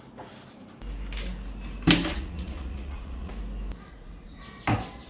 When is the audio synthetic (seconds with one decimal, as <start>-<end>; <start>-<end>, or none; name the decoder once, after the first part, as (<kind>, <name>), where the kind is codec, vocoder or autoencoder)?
2.1-3.3 (vocoder, Vocos); 3.9-4.4